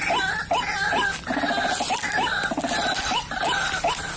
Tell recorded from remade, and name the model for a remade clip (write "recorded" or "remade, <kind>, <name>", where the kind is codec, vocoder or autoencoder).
recorded